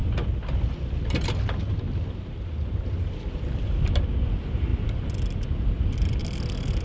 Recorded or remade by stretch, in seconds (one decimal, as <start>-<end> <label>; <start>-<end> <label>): 0.0-6.8 recorded